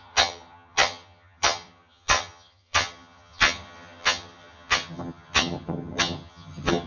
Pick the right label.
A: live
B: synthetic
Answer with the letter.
B